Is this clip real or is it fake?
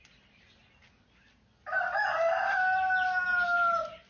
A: real